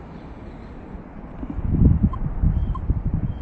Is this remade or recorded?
recorded